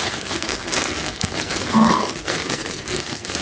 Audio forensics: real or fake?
fake